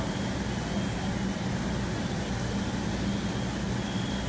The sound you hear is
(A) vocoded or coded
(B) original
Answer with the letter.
B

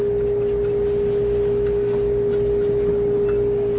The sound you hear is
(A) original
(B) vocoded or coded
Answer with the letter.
A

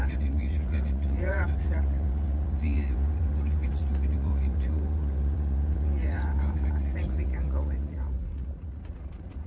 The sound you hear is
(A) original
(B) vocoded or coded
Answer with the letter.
B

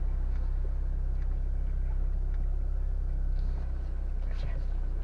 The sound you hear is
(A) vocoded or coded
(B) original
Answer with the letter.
B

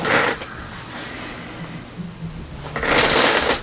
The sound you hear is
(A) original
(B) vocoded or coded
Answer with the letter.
A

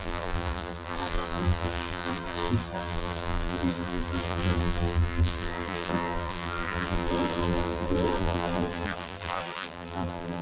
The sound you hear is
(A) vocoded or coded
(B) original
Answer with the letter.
A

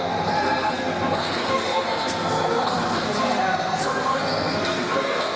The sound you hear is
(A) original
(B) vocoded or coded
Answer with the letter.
B